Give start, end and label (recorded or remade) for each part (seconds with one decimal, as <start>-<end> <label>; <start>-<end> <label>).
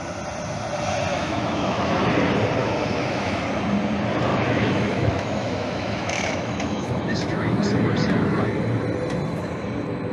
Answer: 0.0-1.1 recorded; 1.1-2.0 remade; 2.0-2.6 recorded; 2.6-3.4 remade; 3.4-4.3 recorded; 4.3-7.5 remade; 7.5-10.1 recorded